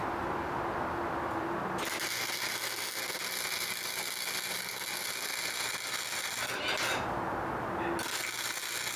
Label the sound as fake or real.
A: real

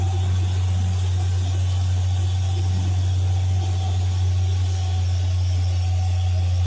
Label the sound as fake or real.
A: real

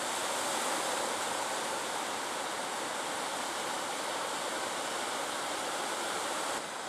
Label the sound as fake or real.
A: real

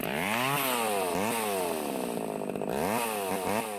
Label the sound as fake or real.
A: real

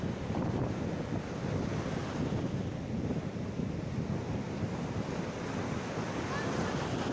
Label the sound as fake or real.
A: real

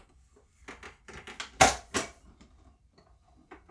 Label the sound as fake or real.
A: real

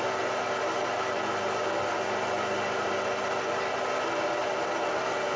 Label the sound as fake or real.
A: real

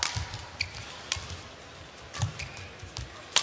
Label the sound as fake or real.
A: real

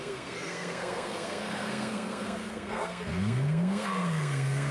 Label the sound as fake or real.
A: fake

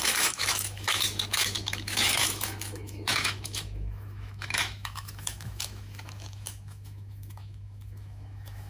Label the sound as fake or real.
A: fake